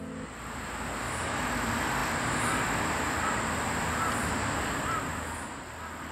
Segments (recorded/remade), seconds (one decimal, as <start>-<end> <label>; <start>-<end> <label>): 0.0-6.1 recorded